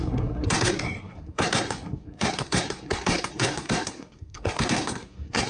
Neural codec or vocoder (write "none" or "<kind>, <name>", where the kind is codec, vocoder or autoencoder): codec, SNAC